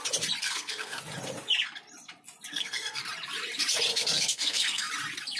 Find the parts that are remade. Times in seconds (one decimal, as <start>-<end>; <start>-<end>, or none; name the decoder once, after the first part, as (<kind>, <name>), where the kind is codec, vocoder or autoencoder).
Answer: 0.4-1.0 (codec, SNAC); 2.5-3.0; 3.9-4.9